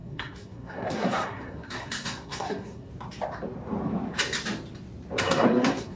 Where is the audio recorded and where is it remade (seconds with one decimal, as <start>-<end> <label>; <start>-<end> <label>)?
0.0-2.9 remade; 2.9-5.2 recorded; 5.2-6.0 remade